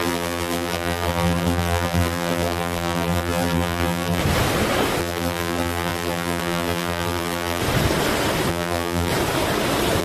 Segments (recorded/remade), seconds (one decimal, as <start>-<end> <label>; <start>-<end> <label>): 0.0-4.2 remade; 4.2-5.0 recorded; 5.0-7.6 remade; 7.6-8.5 recorded; 8.5-9.1 remade; 9.1-10.0 recorded